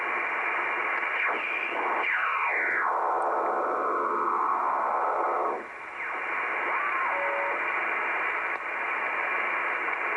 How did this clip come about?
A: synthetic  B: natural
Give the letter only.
B